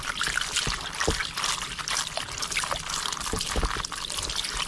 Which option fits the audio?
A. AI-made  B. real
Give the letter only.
A